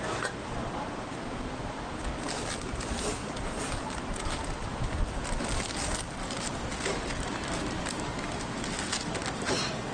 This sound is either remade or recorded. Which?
recorded